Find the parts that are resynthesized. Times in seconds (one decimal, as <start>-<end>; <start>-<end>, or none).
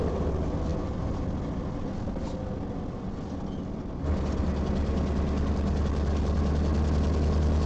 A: none